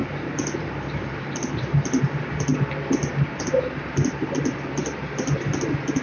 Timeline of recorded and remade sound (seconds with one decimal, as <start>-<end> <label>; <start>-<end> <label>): 0.0-6.0 recorded